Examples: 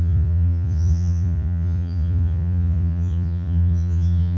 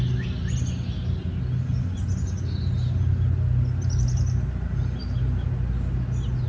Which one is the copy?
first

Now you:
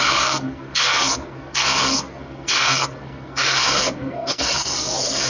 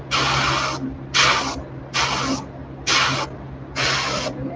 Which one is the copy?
first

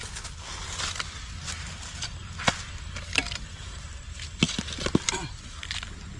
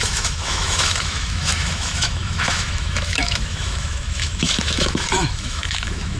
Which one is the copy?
second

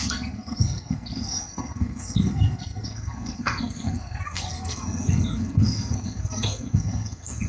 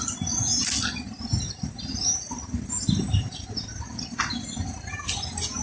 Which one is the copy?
first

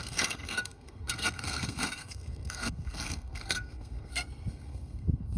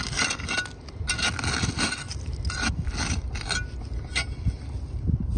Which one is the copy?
first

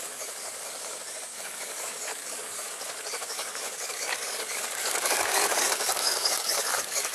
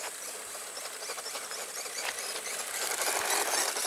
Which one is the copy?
first